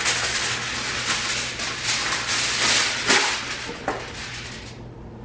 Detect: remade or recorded recorded